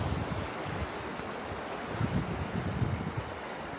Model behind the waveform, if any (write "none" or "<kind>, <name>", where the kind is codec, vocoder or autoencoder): none